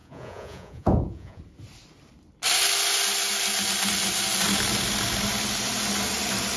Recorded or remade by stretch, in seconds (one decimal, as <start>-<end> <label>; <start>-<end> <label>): 0.0-1.4 remade; 1.4-6.6 recorded